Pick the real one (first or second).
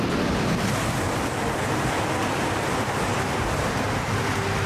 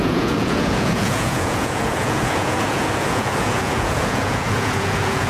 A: first